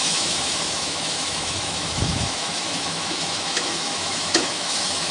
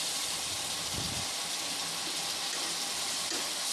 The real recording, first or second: second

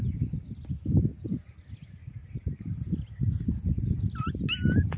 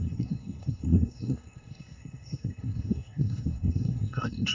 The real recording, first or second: first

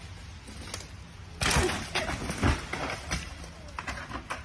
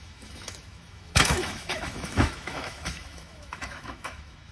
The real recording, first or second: first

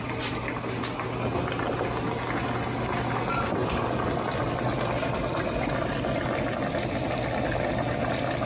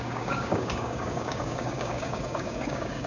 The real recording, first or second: first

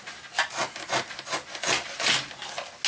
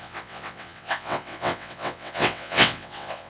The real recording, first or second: first